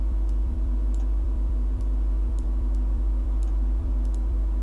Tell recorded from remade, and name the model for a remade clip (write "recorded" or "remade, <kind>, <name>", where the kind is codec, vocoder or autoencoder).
remade, vocoder, BigVGAN v2